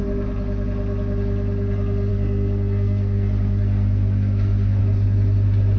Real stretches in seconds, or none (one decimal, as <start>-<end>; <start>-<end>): 0.0-2.1; 4.8-5.8